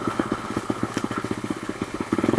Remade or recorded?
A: remade